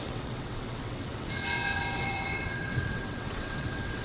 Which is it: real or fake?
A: fake